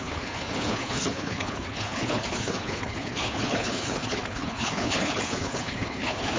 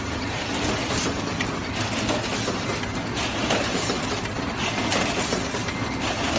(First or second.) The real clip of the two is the second